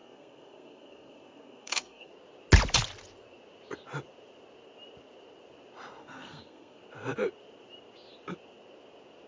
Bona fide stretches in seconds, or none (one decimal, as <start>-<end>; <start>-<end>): 2.1-6.0; 6.8-9.3